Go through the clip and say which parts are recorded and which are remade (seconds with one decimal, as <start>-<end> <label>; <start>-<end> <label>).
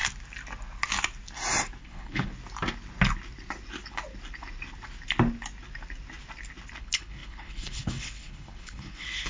0.0-1.8 recorded; 1.8-2.3 remade; 2.3-6.8 recorded; 6.8-9.3 remade